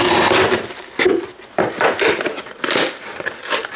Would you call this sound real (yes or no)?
yes